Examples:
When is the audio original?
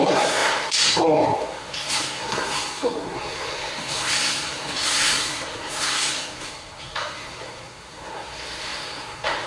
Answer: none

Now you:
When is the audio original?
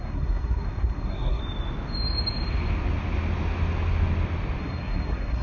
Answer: 1.4-4.6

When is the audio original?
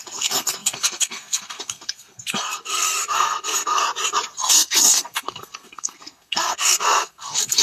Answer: 3.8-4.5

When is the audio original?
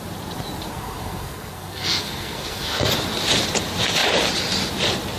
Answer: 0.0-0.7; 2.9-5.2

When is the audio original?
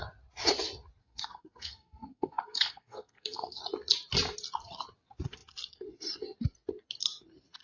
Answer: 0.0-1.0; 3.6-7.6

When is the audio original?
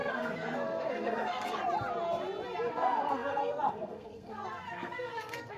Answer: 1.6-2.7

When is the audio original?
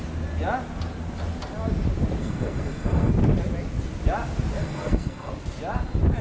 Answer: 0.0-2.2; 3.1-4.6; 5.3-6.2